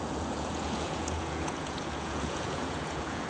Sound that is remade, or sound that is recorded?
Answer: remade